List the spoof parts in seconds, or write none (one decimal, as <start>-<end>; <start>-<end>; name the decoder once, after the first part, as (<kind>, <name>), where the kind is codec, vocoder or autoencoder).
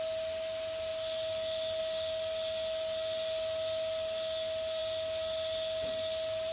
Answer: none